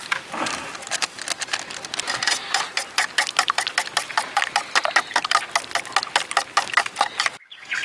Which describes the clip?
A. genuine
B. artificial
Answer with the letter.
A